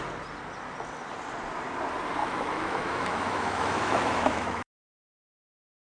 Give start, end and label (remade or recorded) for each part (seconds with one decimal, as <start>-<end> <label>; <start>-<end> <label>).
0.0-2.2 recorded; 2.2-5.9 remade